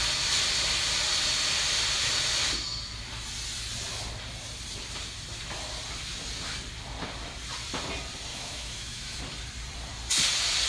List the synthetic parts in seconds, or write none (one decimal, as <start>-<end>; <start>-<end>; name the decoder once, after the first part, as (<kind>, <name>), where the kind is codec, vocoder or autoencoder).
8.3-9.2 (autoencoder, DAC-VAE)